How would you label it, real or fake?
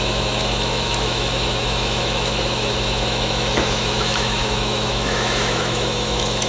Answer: fake